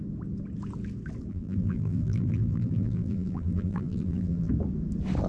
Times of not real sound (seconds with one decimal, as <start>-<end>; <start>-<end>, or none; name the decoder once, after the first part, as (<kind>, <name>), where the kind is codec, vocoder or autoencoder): 1.3-4.5 (vocoder, BigVGAN v2)

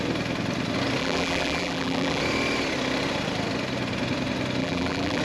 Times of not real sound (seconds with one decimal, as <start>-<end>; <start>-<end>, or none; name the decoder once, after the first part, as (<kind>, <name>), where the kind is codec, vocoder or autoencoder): 1.0-2.2 (vocoder, BigVGAN v2); 4.6-5.2

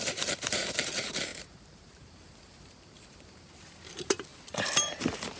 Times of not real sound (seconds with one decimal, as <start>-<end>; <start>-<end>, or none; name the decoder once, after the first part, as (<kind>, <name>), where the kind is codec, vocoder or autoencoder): 0.0-5.4 (vocoder, BigVGAN v2)